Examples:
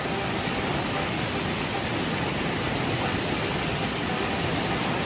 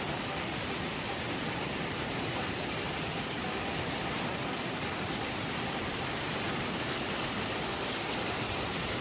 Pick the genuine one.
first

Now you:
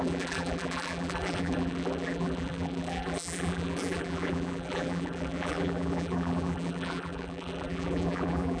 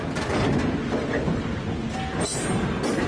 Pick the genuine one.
second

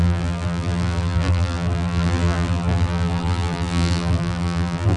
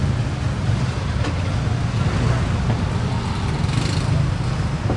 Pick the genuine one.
second